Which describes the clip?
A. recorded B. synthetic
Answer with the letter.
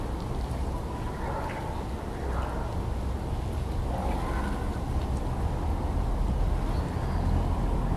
A